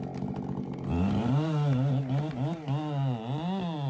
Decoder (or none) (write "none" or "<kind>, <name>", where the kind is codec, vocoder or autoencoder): none